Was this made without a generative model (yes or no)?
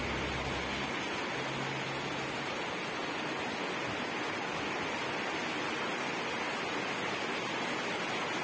yes